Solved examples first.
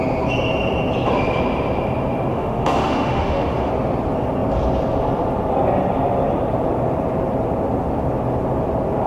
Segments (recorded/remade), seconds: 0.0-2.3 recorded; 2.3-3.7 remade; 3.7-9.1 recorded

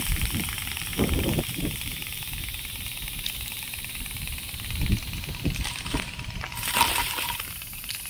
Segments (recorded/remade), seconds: 0.0-8.1 remade

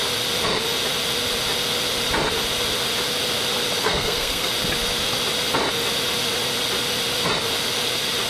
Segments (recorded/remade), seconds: 0.0-3.8 recorded; 3.8-4.5 remade; 4.5-8.3 recorded